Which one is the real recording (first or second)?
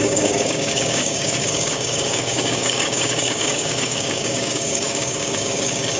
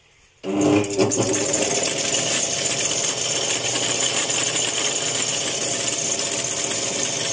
second